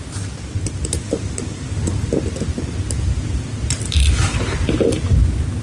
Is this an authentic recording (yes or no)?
yes